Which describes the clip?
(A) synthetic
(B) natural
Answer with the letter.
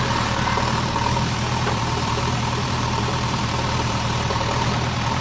A